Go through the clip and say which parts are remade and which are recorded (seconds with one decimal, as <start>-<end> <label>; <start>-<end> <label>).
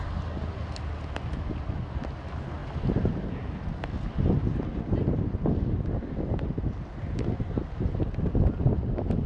0.0-9.3 recorded